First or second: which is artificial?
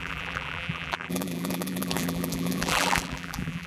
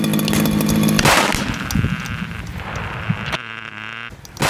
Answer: first